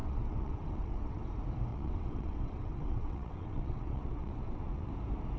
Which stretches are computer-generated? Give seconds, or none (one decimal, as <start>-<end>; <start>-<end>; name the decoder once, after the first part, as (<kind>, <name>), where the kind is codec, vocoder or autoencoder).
0.0-1.2 (vocoder, WaveNeXt); 1.7-4.9